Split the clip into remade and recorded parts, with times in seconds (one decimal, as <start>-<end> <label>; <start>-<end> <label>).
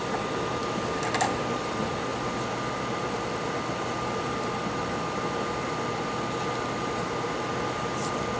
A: 0.0-8.4 recorded